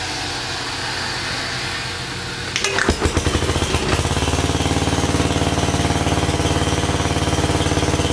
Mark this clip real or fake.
real